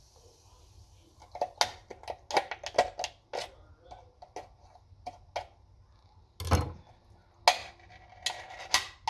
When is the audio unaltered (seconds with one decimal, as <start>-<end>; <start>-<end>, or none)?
0.0-9.1

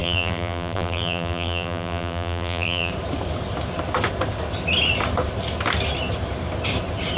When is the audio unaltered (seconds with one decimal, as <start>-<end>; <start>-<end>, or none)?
2.9-7.2

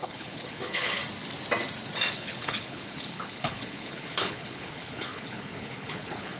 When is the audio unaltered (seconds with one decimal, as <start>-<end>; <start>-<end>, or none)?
1.0-2.1

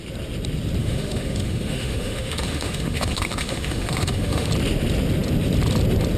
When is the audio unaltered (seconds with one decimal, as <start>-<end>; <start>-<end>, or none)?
0.0-0.8; 4.5-6.2

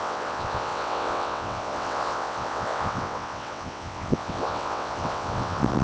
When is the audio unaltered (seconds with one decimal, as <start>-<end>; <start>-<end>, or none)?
none

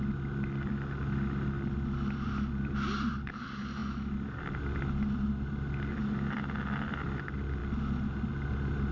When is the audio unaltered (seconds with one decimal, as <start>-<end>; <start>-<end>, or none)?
0.0-8.9